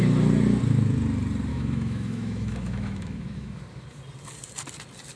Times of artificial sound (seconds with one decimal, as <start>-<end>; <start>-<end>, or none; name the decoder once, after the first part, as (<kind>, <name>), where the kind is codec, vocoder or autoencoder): 1.5-3.6 (autoencoder, DAC-VAE)